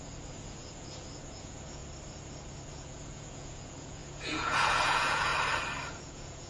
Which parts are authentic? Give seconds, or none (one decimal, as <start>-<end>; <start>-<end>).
1.8-2.7; 5.3-5.9